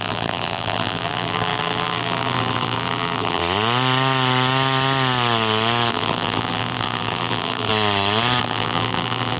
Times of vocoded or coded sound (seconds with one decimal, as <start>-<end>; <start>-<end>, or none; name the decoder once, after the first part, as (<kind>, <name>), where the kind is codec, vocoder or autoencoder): 0.0-3.4 (vocoder, BigVGAN v2); 5.9-7.7; 8.4-9.4